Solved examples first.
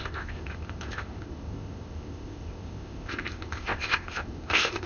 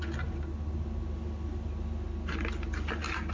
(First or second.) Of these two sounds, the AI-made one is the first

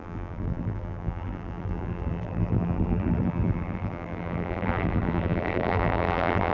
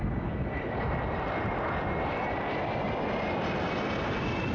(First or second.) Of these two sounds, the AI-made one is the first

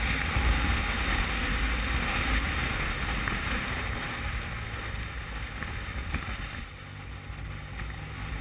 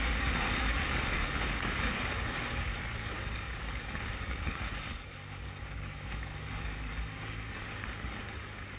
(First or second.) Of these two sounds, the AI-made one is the second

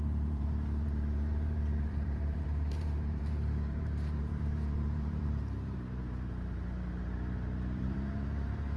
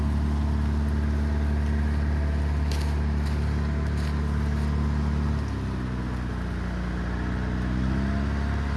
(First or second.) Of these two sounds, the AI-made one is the first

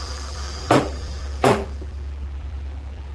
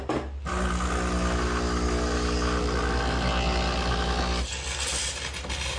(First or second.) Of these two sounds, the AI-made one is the first